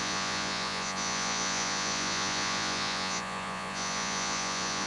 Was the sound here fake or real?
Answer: fake